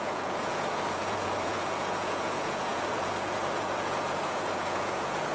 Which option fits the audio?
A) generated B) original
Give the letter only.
A